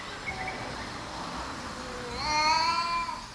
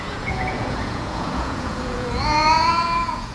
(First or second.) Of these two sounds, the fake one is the second